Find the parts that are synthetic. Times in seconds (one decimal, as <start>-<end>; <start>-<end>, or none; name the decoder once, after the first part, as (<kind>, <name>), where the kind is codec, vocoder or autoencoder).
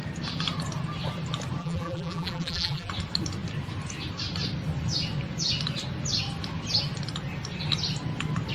1.6-2.9 (vocoder, BigVGAN v2)